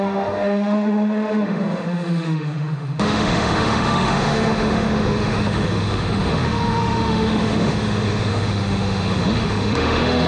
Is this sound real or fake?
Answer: fake